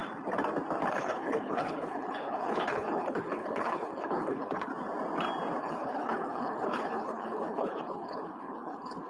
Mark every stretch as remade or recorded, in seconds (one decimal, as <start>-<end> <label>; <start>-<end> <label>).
0.0-0.9 recorded; 0.9-4.7 remade; 4.7-5.6 recorded; 5.6-9.1 remade